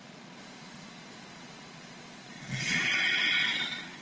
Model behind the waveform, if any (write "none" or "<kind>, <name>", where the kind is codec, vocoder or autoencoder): vocoder, Vocos